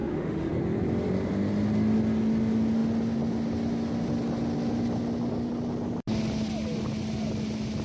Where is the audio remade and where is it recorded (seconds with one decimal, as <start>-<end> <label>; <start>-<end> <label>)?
0.0-0.5 remade; 0.5-7.8 recorded